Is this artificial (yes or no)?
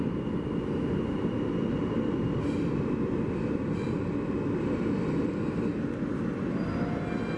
no